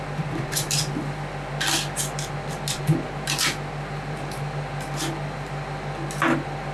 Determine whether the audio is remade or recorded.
recorded